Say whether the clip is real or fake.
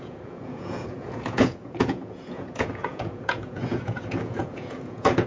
fake